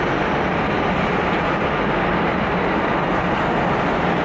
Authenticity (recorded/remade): recorded